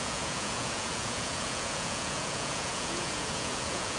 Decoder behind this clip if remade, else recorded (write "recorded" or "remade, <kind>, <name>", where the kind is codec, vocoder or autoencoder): remade, vocoder, Vocos